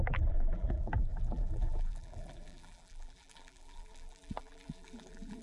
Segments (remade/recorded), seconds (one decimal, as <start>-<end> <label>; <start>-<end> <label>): 0.0-5.4 remade